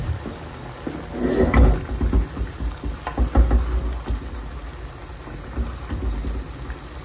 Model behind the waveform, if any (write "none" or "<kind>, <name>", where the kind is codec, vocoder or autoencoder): none